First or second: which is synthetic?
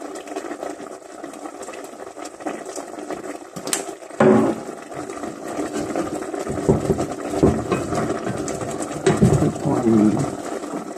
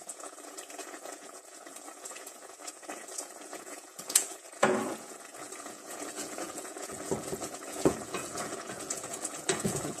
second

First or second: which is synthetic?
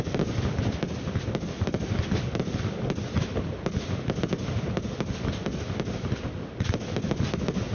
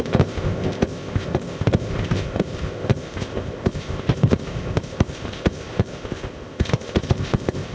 second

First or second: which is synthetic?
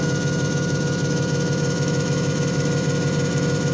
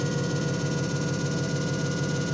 first